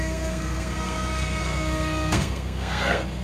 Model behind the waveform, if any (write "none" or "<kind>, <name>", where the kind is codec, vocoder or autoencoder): codec, SNAC